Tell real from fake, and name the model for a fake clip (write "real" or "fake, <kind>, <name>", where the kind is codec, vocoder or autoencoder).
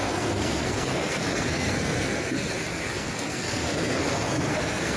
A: fake, codec, SNAC